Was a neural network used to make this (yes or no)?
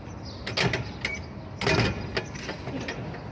no